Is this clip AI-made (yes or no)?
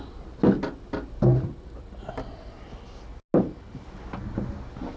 no